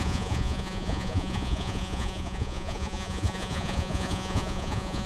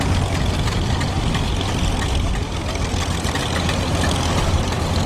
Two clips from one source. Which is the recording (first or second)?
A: second